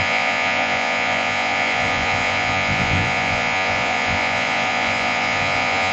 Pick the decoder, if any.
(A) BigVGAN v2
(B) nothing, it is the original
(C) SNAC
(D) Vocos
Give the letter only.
D